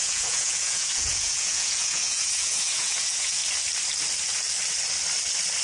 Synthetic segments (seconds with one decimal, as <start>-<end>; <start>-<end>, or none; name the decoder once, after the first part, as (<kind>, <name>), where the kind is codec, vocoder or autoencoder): 0.0-3.4 (vocoder, Vocos)